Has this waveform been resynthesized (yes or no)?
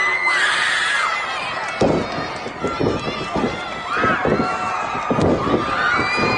no